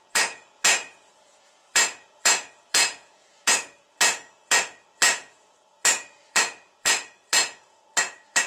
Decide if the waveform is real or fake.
fake